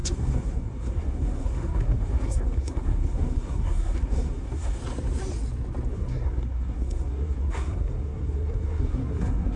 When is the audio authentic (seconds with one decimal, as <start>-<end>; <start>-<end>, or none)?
4.8-5.9